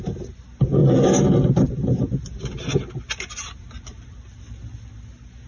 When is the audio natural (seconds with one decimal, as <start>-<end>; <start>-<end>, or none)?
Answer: 0.0-5.5